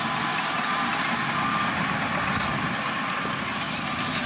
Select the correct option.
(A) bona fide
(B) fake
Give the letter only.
A